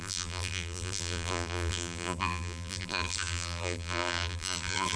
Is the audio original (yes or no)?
no